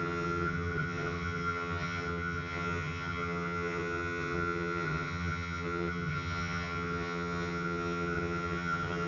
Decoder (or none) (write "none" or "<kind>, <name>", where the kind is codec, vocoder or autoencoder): vocoder, HiFi-GAN